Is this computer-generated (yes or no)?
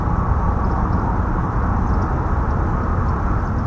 no